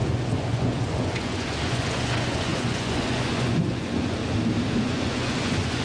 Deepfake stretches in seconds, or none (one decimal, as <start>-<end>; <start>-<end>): 0.0-4.2; 4.8-5.8